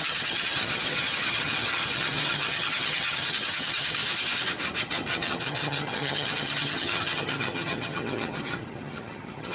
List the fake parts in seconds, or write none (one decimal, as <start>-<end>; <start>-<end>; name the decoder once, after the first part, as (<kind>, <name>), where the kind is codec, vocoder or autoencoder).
0.0-4.0 (vocoder, HiFi-GAN); 4.8-9.5